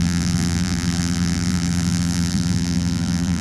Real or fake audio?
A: fake